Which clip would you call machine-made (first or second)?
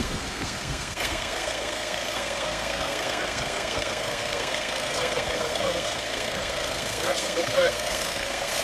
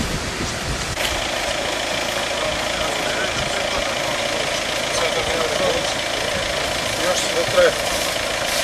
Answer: first